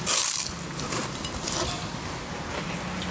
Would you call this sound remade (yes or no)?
no